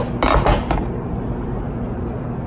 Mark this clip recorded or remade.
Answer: recorded